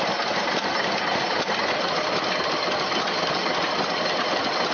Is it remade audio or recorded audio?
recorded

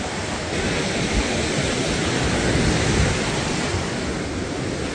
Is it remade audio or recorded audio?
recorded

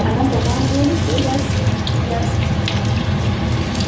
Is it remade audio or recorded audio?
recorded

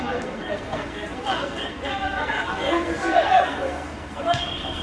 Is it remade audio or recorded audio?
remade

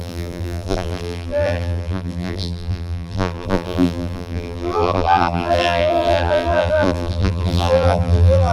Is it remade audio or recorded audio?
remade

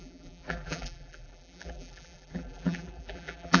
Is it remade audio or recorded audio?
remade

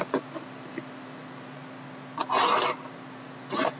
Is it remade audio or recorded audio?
recorded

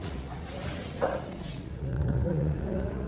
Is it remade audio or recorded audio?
remade